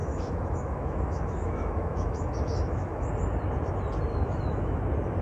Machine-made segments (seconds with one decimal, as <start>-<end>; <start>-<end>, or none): 0.0-3.1; 4.1-4.8